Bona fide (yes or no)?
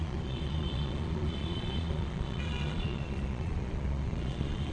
no